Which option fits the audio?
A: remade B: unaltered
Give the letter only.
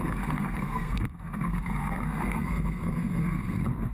A